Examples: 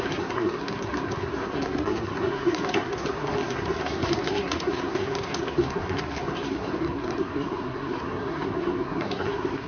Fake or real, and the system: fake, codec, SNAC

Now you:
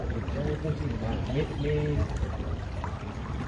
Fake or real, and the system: real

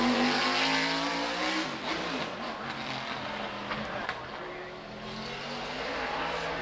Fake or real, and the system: real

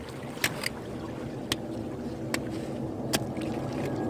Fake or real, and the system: real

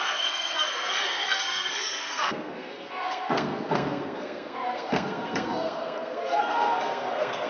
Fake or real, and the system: fake, codec, SNAC